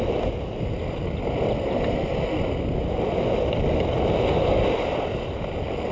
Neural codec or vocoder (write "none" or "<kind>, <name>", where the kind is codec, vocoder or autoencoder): none